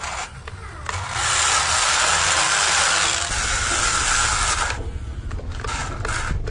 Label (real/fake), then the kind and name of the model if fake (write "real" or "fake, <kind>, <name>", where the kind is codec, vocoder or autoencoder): real